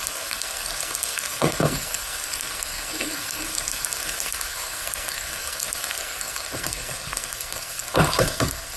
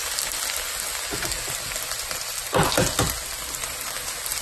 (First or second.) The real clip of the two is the second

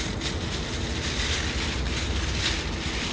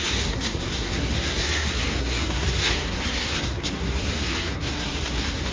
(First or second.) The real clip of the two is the first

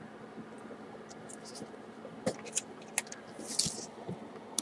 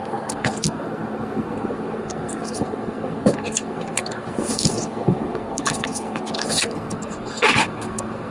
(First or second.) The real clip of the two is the first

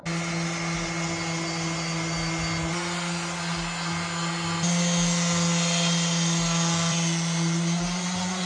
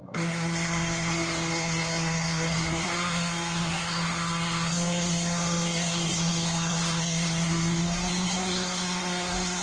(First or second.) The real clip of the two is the first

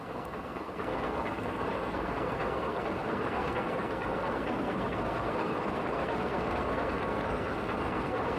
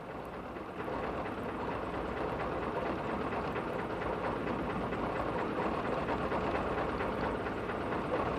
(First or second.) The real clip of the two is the second